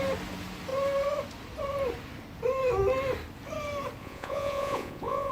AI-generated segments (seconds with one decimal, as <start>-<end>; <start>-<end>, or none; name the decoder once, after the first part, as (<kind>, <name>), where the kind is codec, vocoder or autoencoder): 4.0-5.3 (vocoder, Vocos)